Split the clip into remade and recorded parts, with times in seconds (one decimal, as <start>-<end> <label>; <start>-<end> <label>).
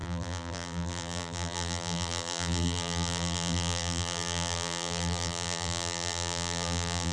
0.0-7.1 remade